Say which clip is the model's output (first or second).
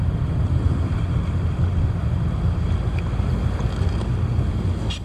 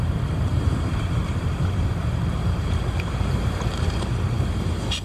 second